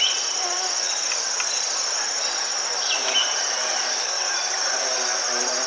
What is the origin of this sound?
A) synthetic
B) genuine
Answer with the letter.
B